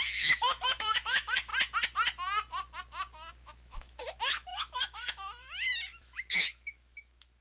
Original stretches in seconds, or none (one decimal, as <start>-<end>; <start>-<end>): 1.5-3.3